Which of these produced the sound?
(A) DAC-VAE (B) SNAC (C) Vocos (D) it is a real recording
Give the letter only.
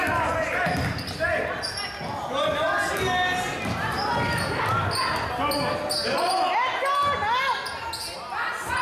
D